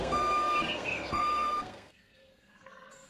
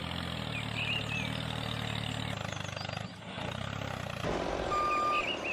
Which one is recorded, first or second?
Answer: second